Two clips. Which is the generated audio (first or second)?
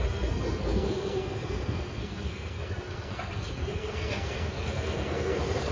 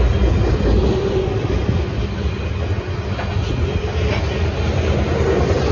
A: first